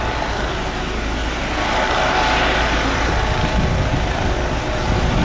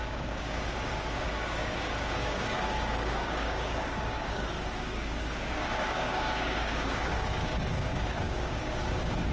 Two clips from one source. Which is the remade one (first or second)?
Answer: second